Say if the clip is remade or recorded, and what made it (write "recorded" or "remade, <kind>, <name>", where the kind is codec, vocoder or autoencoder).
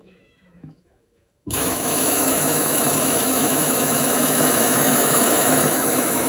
remade, autoencoder, DAC-VAE